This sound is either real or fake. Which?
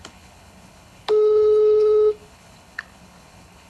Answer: fake